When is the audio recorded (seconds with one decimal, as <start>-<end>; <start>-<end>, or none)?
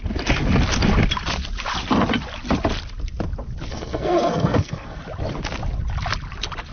0.0-3.7; 5.0-6.7